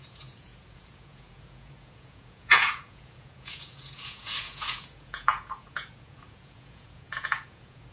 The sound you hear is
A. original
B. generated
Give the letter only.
B